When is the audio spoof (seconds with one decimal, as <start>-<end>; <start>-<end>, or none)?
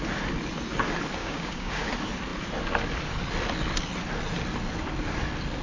1.2-1.9